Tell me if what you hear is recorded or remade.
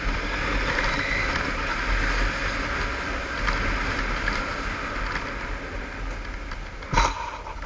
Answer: recorded